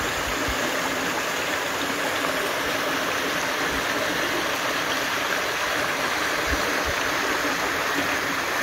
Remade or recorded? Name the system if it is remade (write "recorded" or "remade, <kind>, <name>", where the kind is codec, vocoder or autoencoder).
recorded